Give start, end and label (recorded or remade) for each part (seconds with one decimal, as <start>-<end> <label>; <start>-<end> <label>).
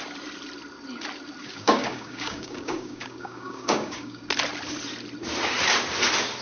0.0-1.4 recorded; 1.4-4.2 remade; 4.2-6.4 recorded